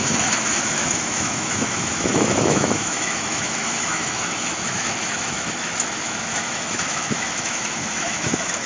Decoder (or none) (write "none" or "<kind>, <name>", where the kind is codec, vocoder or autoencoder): autoencoder, DAC-VAE